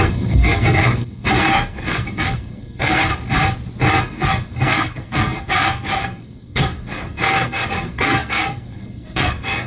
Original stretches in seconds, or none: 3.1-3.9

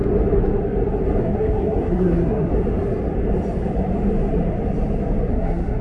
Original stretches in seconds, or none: 0.0-1.2; 2.5-5.3